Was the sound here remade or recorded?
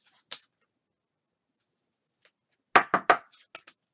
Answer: recorded